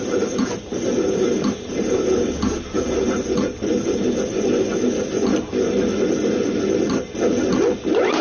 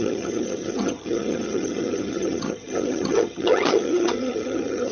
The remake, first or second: second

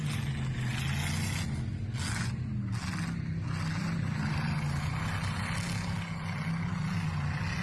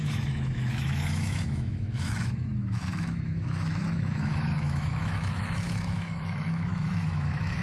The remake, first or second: second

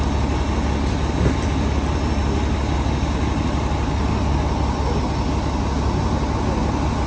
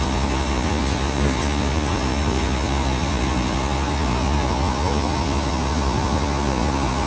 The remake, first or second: second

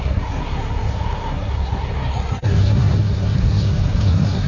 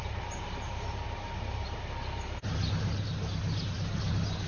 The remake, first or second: first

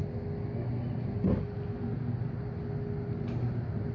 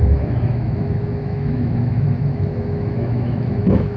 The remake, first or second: second